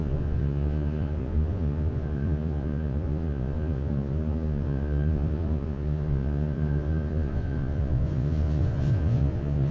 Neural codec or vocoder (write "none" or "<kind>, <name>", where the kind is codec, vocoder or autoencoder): vocoder, Vocos